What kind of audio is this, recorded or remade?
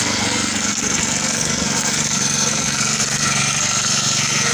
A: remade